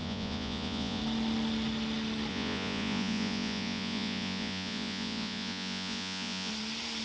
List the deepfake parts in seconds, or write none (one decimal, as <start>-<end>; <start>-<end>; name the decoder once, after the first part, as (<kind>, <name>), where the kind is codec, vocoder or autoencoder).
0.0-1.0 (vocoder, Vocos); 2.3-6.5